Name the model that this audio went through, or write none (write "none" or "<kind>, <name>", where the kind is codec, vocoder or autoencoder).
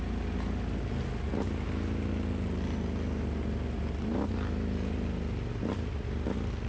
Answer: none